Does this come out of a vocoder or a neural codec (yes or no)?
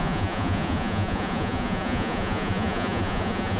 yes